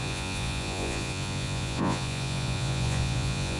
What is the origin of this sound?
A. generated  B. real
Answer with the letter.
A